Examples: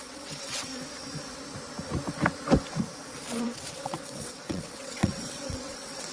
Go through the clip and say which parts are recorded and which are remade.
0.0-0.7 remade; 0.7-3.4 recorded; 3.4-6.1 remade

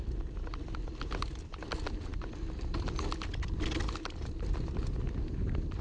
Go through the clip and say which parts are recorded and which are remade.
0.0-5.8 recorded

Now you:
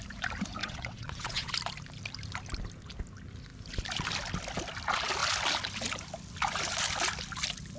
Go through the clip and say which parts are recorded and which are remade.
0.0-0.6 recorded; 0.6-1.5 remade; 1.5-7.8 recorded

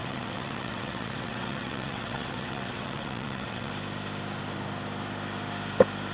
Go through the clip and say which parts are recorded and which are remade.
0.0-3.7 remade; 3.7-6.1 recorded